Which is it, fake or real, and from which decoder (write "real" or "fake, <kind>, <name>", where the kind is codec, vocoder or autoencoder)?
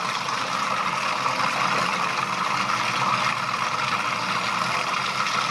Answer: real